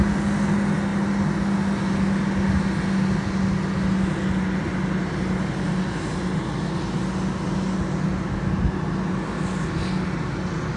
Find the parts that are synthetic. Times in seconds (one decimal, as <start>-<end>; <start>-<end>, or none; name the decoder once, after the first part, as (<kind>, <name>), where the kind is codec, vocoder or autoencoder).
none

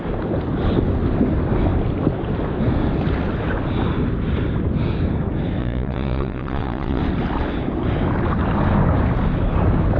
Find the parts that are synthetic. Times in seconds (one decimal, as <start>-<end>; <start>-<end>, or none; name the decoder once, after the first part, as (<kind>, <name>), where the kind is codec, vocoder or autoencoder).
5.6-7.0 (vocoder, Vocos)

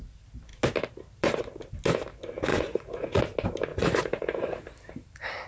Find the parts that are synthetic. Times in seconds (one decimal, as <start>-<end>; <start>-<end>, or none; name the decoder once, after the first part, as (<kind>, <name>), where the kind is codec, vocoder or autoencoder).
2.5-3.2 (vocoder, Vocos); 3.7-4.6

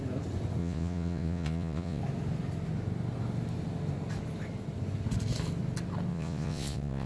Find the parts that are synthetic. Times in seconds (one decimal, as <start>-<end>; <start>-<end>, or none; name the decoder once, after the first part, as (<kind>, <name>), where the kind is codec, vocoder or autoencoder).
0.6-2.0 (vocoder, Vocos); 6.1-7.1